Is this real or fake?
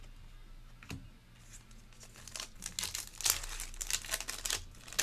real